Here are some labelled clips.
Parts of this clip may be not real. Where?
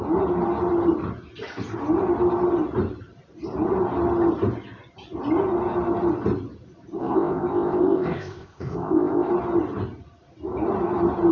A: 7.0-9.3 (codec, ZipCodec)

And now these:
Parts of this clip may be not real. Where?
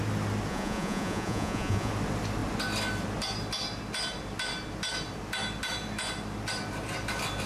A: 0.5-1.9 (vocoder, Vocos)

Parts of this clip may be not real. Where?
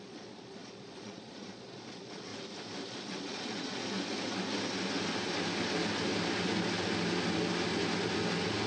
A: 0.0-2.3 (vocoder, Vocos); 2.9-3.8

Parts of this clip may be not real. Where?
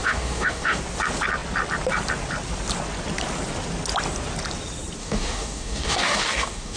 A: 0.0-0.8 (codec, DAC); 5.0-6.8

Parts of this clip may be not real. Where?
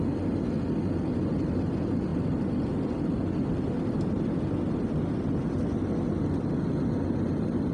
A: none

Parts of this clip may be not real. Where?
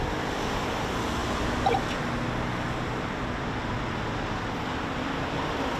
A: none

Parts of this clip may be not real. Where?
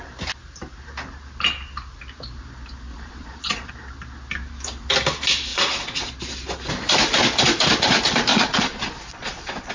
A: 2.9-3.7 (vocoder, Vocos); 5.5-6.1; 8.3-9.7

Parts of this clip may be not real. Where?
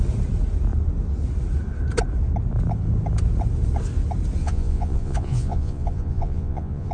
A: 4.4-6.9 (vocoder, Vocos)